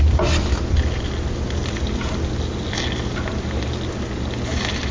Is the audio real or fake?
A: real